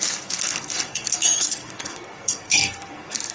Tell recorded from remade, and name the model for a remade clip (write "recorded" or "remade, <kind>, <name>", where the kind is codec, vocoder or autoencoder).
remade, codec, SNAC